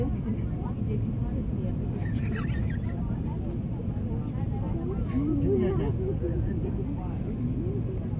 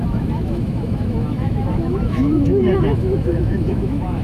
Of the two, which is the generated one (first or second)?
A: second